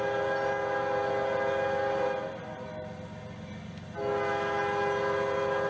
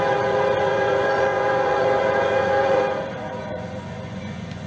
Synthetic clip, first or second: second